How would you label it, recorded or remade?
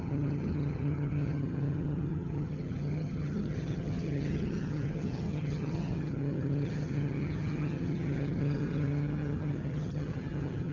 remade